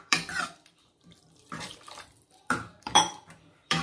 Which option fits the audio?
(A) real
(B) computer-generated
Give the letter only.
B